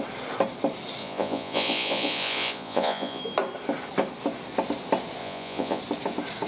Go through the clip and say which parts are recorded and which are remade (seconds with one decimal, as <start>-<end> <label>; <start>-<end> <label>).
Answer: 0.0-1.0 recorded; 1.0-3.2 remade; 3.2-5.2 recorded; 5.2-5.8 remade; 5.8-6.5 recorded